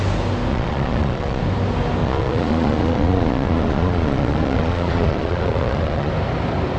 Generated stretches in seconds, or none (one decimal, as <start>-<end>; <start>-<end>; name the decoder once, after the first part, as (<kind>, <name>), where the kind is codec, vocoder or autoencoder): 0.5-1.4 (vocoder, Vocos); 2.0-6.1